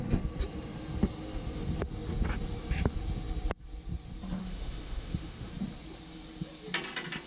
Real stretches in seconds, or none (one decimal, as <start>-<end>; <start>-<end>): 0.0-4.4; 5.5-7.3